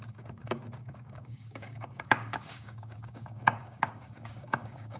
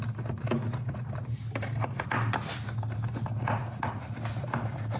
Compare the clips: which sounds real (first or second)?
second